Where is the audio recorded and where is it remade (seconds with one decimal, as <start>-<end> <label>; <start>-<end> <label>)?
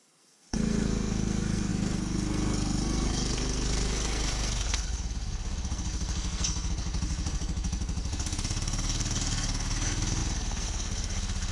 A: 0.0-11.5 remade